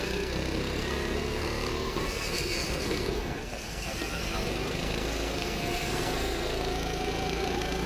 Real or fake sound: fake